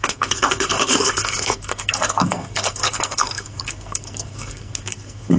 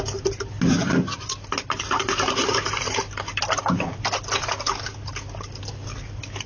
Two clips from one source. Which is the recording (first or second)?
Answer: second